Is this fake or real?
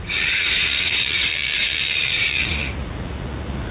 fake